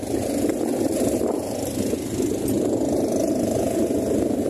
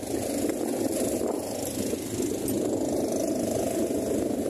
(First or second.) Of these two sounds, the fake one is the first